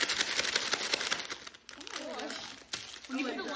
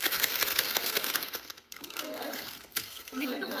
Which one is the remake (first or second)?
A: second